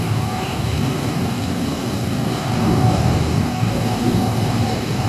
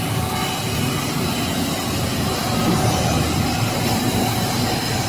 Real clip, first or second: second